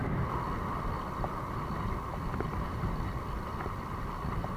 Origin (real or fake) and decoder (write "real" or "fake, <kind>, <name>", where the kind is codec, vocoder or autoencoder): real